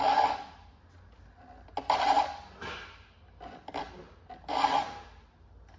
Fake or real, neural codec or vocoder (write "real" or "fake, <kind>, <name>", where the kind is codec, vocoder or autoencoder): real